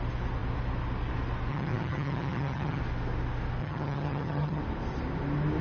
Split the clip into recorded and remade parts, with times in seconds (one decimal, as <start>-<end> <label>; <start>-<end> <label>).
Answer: 0.0-1.5 recorded; 1.5-2.8 remade; 2.8-3.6 recorded; 3.6-4.6 remade; 4.6-5.6 recorded